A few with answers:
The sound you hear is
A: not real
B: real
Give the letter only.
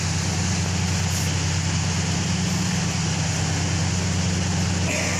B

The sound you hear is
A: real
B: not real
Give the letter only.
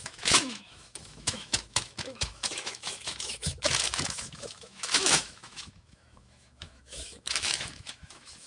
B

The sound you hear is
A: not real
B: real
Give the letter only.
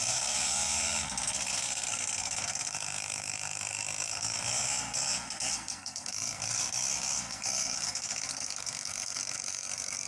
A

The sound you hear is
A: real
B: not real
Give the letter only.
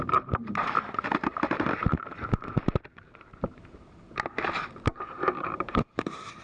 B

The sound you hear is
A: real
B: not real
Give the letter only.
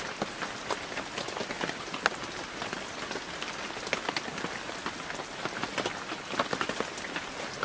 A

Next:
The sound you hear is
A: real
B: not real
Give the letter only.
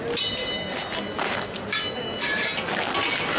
A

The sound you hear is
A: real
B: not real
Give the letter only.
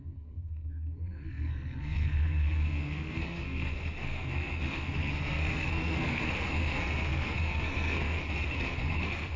B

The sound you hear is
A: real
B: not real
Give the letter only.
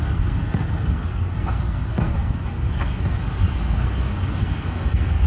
B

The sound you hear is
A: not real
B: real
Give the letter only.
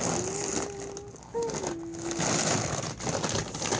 B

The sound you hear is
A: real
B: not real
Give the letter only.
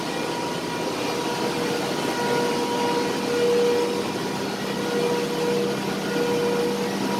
A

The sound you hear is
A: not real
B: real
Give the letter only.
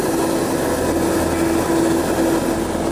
B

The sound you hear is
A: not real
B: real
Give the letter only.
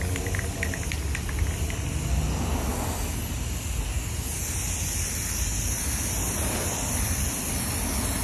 B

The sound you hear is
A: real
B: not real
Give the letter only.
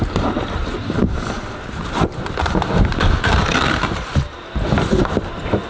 B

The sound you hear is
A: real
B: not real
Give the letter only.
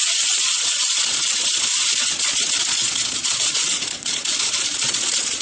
B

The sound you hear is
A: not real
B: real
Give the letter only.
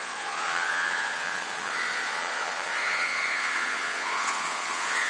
A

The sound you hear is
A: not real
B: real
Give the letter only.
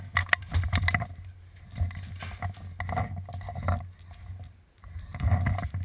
B